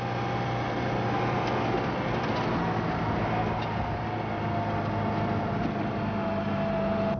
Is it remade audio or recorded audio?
recorded